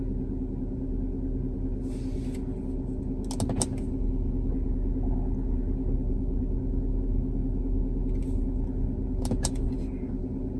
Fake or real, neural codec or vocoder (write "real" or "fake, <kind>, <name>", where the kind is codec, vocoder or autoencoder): real